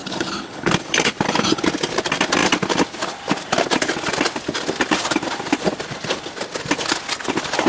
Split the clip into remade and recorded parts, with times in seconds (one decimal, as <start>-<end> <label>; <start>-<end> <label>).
0.0-0.7 remade; 0.7-7.7 recorded